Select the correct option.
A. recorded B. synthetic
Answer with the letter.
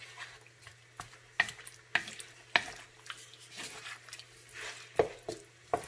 A